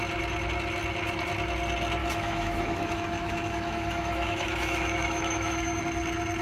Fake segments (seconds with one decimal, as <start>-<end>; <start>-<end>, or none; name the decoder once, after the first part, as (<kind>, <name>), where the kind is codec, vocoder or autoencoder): 2.0-5.8 (autoencoder, DAC-VAE)